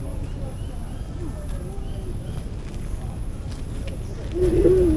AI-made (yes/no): no